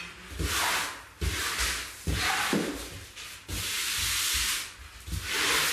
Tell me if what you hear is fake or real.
real